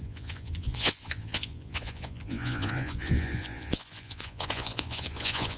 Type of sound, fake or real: fake